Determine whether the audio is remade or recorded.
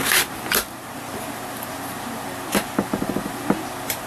recorded